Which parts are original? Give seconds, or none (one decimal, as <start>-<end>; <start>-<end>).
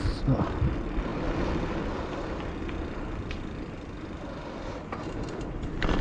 0.0-6.0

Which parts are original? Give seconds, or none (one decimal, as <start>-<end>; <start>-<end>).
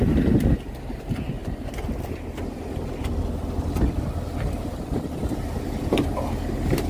0.0-6.9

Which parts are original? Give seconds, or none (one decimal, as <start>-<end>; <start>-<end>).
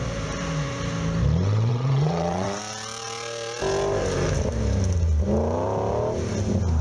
0.0-1.7; 2.6-6.8